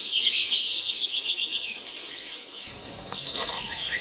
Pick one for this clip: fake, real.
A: fake